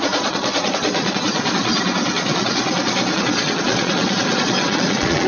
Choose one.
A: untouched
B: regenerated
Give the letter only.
B